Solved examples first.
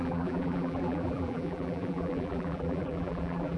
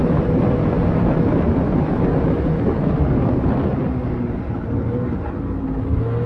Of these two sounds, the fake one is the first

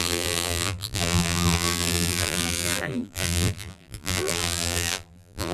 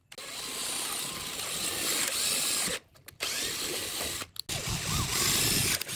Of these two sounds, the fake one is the first